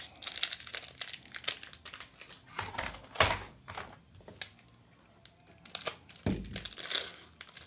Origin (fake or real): real